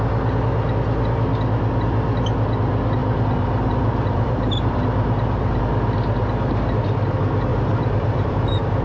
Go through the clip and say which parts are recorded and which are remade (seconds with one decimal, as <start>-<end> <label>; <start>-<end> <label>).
0.0-3.0 recorded; 3.0-5.6 remade; 5.6-7.5 recorded; 7.5-8.8 remade

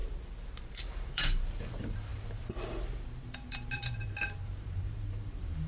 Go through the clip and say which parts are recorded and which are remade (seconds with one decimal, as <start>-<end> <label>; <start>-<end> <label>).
0.0-0.6 recorded; 0.6-5.7 remade

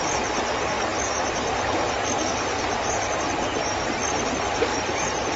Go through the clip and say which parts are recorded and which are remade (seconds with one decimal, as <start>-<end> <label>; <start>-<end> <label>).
0.0-4.7 recorded; 4.7-5.4 remade

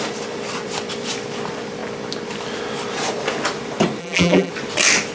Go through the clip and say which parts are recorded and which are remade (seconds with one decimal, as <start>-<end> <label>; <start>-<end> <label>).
0.0-4.0 recorded; 4.0-4.5 remade; 4.5-5.1 recorded

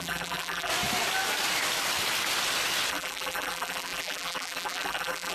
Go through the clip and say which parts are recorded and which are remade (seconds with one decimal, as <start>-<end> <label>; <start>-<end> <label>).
0.0-0.7 remade; 0.7-2.9 recorded; 2.9-5.3 remade